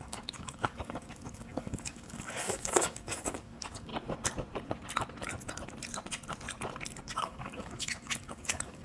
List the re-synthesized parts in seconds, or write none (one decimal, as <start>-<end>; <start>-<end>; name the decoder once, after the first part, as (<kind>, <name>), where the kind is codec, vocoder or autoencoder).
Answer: 0.0-3.9 (codec, DAC); 7.0-8.8